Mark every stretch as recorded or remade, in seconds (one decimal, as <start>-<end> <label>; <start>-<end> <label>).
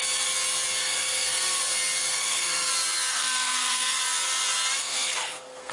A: 0.0-0.8 recorded; 0.8-1.6 remade; 1.6-2.1 recorded; 2.1-2.7 remade; 2.7-3.1 recorded; 3.1-4.0 remade; 4.0-4.8 recorded; 4.8-5.7 remade